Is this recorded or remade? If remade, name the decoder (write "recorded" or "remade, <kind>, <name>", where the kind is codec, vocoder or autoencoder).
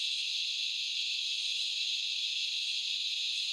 recorded